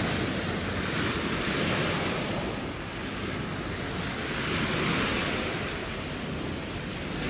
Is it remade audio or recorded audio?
recorded